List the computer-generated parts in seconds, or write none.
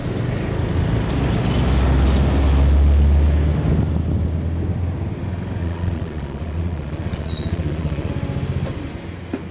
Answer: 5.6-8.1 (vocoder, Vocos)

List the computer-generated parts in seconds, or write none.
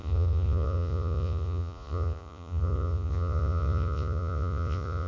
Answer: 0.0-5.1 (vocoder, Vocos)